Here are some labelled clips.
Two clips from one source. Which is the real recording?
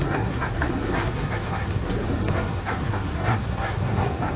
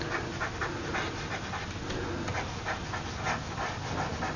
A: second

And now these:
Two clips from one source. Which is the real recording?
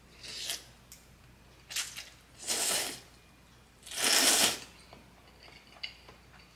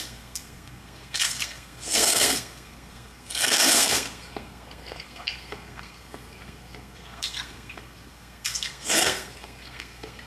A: first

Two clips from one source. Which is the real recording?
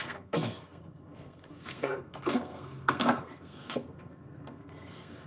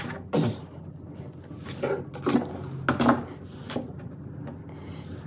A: second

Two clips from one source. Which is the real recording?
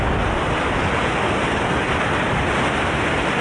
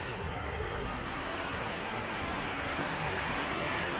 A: first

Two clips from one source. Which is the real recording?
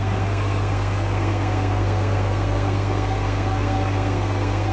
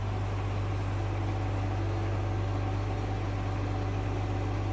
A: second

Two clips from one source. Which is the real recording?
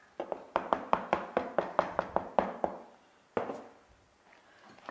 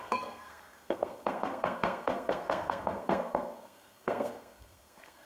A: first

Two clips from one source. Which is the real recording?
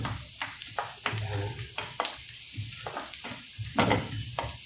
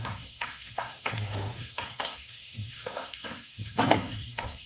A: first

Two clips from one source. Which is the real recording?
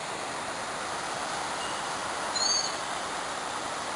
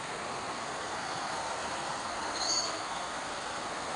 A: first